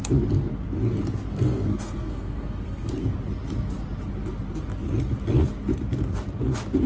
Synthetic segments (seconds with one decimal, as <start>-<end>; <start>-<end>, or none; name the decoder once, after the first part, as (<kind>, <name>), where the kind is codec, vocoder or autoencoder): 1.3-2.9 (codec, SNAC)